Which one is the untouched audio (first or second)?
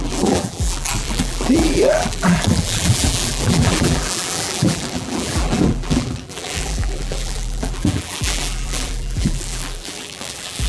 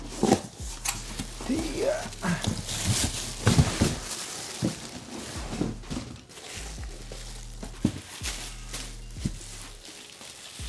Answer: second